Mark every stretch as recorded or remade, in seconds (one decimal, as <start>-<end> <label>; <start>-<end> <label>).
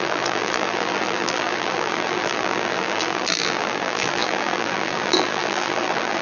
0.0-6.2 remade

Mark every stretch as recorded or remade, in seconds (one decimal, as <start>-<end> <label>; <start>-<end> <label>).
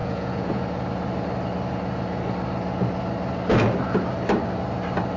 0.0-0.6 remade; 0.6-5.2 recorded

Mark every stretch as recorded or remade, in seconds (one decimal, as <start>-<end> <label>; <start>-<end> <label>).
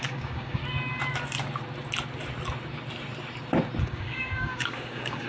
0.0-0.6 remade; 0.6-3.8 recorded; 3.8-5.3 remade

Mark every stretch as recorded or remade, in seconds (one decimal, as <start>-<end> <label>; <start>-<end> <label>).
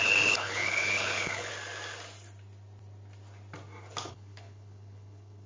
0.0-1.5 remade; 1.5-4.1 recorded; 4.1-5.5 remade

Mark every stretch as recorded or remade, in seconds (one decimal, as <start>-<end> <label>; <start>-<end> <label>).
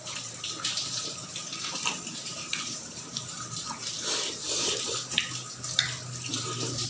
0.0-4.4 remade; 4.4-6.3 recorded; 6.3-6.9 remade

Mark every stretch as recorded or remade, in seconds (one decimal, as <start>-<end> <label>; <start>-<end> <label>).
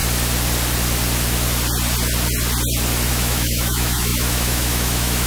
0.0-3.1 recorded; 3.1-5.3 remade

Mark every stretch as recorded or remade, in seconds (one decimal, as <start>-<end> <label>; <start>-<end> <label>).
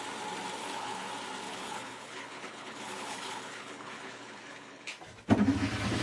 0.0-0.6 recorded; 0.6-1.1 remade; 1.1-1.5 recorded; 1.5-4.9 remade; 4.9-6.0 recorded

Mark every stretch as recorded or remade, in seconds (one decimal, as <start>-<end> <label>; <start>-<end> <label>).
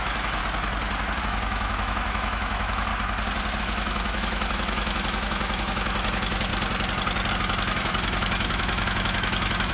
0.0-0.4 remade; 0.4-1.2 recorded; 1.2-2.9 remade; 2.9-3.6 recorded; 3.6-6.5 remade; 6.5-7.3 recorded; 7.3-9.7 remade